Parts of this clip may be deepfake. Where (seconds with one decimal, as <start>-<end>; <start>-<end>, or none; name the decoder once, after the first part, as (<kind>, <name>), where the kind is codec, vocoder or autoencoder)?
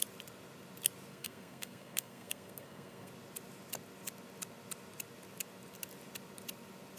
1.1-3.1 (codec, SNAC)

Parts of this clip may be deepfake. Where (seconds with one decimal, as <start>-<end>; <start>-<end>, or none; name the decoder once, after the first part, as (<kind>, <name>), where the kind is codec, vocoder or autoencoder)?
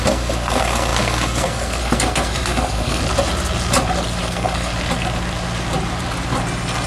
0.0-3.0 (codec, SNAC); 4.2-4.7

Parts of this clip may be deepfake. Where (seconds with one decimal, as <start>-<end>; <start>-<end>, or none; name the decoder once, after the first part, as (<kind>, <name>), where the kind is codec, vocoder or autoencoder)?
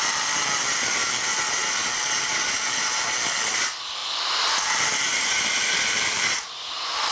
none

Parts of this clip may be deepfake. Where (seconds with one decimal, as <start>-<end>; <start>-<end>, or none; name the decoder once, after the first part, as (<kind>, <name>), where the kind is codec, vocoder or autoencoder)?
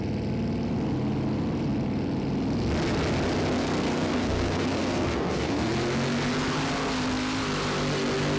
3.6-5.7 (codec, SNAC)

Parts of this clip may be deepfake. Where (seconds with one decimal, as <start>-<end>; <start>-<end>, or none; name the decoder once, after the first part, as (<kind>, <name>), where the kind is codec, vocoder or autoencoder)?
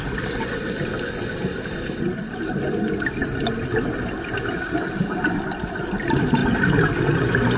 none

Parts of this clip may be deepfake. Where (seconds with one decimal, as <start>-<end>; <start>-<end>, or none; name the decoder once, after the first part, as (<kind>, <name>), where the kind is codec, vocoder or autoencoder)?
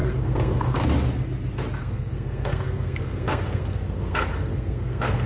0.0-0.8 (codec, SNAC); 1.8-5.3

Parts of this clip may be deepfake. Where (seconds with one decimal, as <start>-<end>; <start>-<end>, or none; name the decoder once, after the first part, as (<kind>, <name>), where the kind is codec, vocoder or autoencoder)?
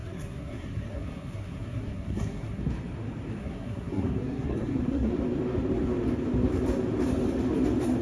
0.0-2.6 (codec, SNAC); 3.4-5.1